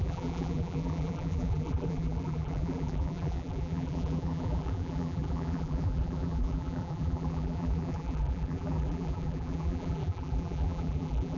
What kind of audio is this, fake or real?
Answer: fake